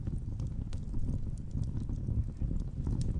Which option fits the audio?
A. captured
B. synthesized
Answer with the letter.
A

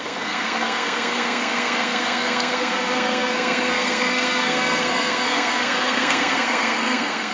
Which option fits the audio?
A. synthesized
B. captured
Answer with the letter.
A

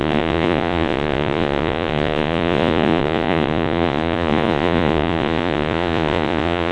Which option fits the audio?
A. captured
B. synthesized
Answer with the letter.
B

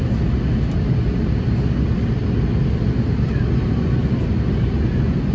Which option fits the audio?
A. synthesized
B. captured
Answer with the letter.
B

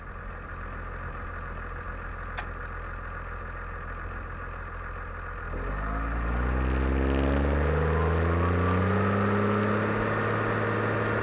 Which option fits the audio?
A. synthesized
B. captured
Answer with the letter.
B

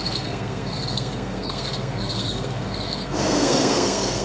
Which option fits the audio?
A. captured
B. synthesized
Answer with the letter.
B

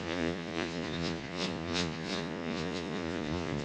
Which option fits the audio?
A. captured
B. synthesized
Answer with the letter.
B